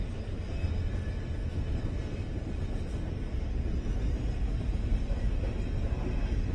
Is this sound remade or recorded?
recorded